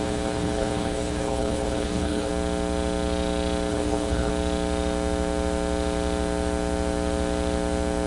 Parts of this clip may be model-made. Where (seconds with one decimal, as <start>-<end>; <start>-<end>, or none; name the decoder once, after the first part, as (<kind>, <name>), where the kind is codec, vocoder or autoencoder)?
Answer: 0.0-2.3 (codec, HILCodec); 3.7-4.3